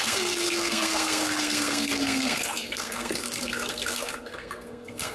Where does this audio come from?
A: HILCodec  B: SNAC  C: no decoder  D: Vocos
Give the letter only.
B